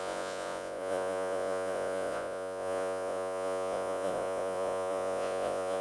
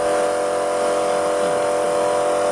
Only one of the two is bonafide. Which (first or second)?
second